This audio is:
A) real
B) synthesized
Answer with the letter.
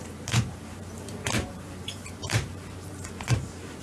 B